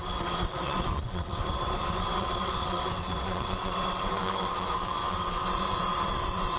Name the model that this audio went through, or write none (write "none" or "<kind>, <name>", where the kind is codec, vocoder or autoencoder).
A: vocoder, WaveNeXt